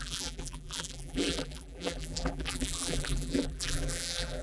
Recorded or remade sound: remade